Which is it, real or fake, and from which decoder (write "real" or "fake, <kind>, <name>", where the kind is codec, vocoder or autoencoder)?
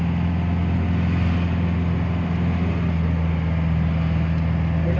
real